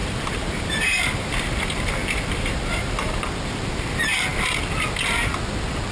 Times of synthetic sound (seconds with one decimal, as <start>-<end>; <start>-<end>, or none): 0.0-3.3